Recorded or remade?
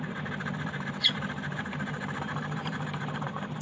remade